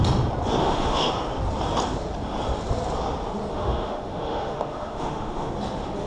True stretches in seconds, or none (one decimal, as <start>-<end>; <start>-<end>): 0.0-0.6; 1.1-3.5; 5.5-6.1